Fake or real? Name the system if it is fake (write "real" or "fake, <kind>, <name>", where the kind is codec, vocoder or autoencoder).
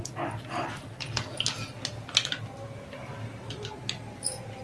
real